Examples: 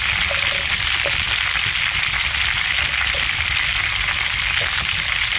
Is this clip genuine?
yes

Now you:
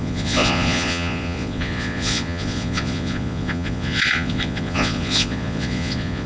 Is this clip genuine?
no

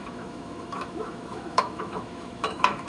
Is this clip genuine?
no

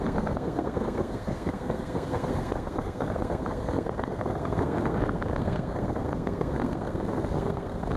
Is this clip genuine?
no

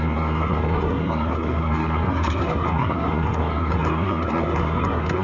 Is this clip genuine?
no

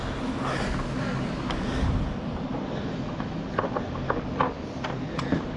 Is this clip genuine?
yes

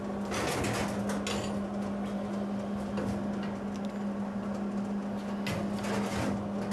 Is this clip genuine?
yes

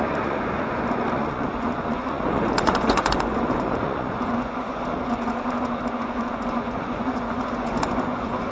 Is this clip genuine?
no